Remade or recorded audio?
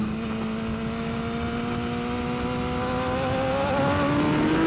recorded